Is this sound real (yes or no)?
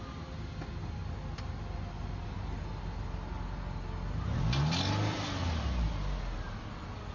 yes